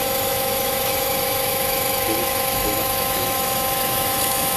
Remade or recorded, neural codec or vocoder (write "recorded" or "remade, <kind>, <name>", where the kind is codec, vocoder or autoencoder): remade, autoencoder, DAC-VAE